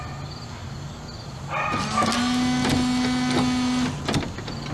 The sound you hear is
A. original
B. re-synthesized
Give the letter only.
A